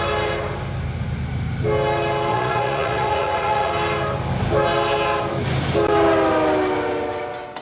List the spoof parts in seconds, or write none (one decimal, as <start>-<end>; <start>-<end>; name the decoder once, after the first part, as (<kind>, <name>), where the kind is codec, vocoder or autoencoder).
2.3-3.7 (vocoder, Vocos)